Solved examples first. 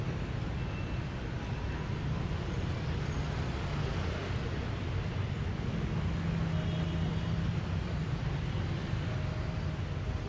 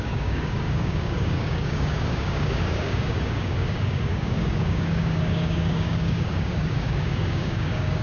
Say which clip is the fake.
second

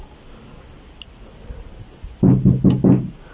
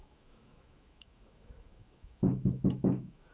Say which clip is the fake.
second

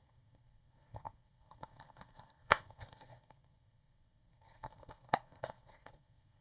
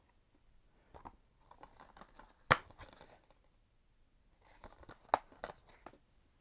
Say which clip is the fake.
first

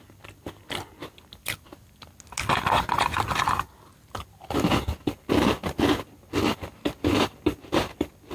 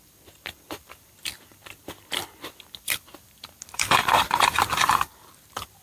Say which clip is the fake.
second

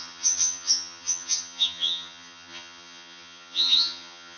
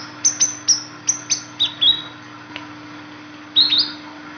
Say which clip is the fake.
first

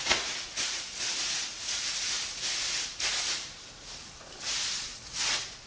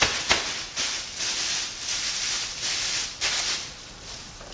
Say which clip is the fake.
first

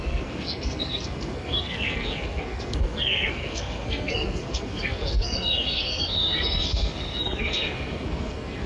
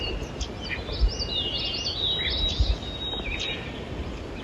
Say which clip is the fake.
first